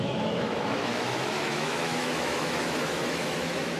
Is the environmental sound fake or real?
fake